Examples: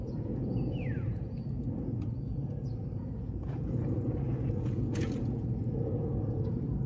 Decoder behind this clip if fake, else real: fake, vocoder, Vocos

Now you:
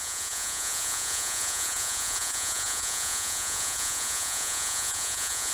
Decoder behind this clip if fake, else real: fake, vocoder, Vocos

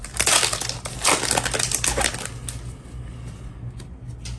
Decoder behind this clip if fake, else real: real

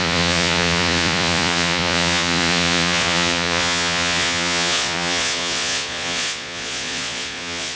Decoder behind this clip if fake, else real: fake, vocoder, Vocos